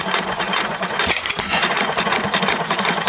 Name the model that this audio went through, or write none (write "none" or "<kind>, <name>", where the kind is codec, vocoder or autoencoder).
vocoder, Vocos